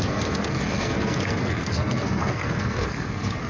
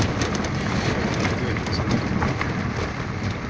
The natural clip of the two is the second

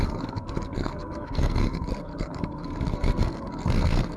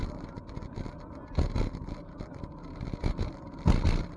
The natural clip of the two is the second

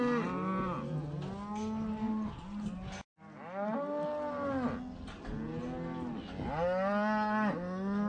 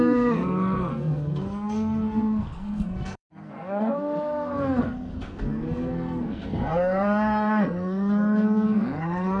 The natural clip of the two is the first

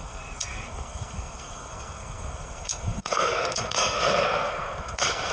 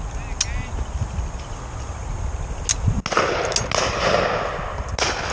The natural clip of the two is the second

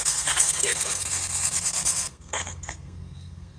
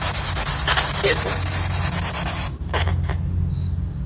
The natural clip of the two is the second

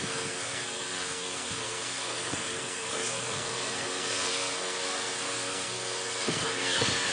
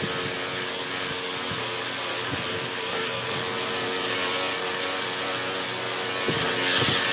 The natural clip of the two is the second